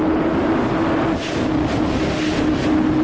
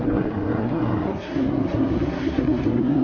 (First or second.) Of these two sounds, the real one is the first